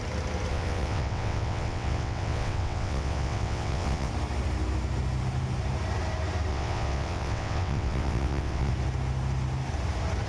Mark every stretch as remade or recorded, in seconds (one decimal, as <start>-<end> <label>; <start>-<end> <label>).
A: 0.0-0.5 recorded; 0.5-4.1 remade; 4.1-6.5 recorded; 6.5-8.7 remade; 8.7-10.3 recorded